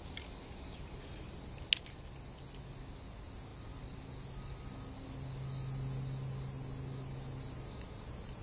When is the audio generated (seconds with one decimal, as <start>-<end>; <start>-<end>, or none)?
none